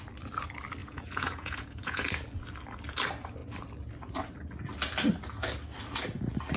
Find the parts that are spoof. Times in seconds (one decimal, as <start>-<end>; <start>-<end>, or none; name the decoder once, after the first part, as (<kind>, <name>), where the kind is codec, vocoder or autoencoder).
0.8-2.0 (vocoder, Vocos)